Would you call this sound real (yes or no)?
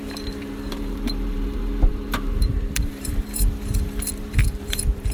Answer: no